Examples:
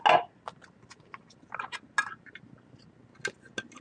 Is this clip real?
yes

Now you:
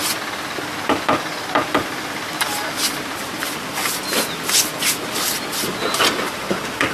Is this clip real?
yes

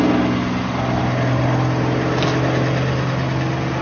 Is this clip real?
yes